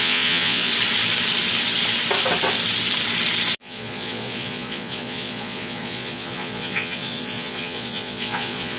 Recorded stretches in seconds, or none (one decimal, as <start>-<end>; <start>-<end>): 0.7-3.6